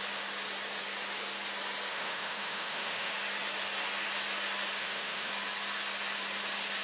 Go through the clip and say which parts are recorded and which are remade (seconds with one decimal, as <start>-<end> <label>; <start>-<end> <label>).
0.0-1.9 recorded; 1.9-3.1 remade; 3.1-4.8 recorded; 4.8-5.3 remade; 5.3-6.8 recorded